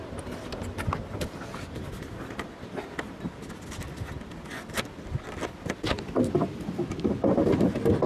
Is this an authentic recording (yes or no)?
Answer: yes